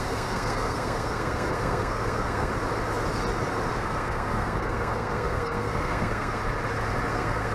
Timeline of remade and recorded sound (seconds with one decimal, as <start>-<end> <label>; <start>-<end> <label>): 0.0-2.5 remade; 2.5-3.7 recorded; 3.7-6.4 remade; 6.4-7.1 recorded; 7.1-7.5 remade